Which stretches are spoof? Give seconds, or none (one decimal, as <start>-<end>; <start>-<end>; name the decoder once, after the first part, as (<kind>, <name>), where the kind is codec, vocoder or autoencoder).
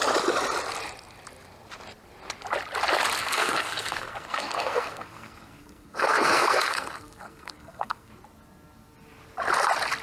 3.2-8.1 (codec, SNAC)